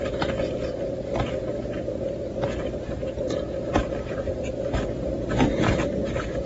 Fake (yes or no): no